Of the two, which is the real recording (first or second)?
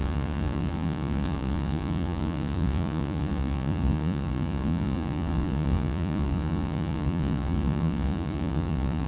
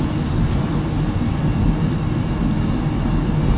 second